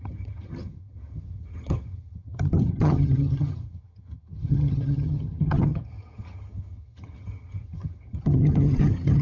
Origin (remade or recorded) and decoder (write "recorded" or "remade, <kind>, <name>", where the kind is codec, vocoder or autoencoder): remade, vocoder, HiFi-GAN